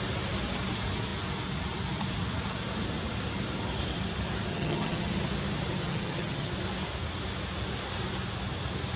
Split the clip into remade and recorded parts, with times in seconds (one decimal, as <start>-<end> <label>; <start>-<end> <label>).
0.0-4.5 recorded; 4.5-5.1 remade; 5.1-5.8 recorded; 5.8-6.5 remade; 6.5-9.0 recorded